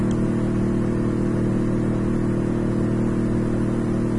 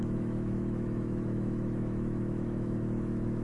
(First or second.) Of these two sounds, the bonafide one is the first